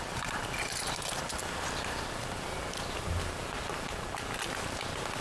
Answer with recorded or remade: recorded